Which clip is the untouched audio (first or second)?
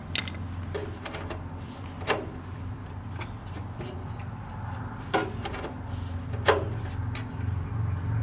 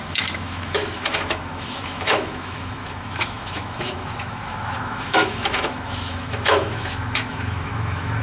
first